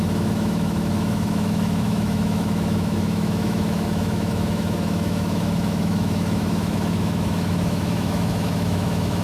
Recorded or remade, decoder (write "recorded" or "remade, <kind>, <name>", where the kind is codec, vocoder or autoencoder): remade, autoencoder, DAC-VAE